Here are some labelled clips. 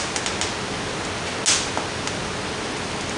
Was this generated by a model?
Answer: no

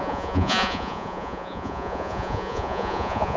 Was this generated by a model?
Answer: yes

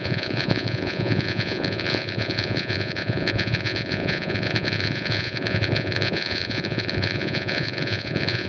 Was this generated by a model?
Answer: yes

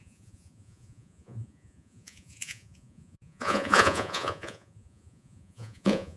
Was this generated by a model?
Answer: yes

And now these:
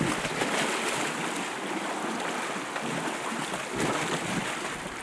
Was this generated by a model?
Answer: no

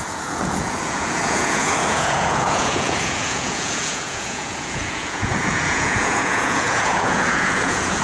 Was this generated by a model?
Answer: yes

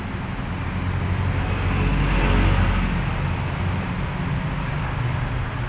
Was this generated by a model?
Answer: no